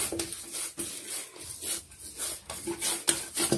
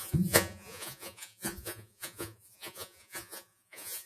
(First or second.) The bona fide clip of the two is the first